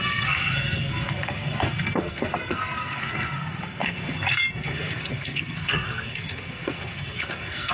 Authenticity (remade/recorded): remade